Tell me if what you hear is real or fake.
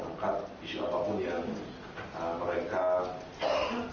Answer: real